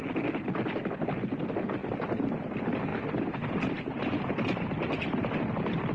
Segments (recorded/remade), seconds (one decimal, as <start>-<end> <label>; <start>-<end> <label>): 0.0-2.9 recorded; 2.9-5.4 remade; 5.4-5.9 recorded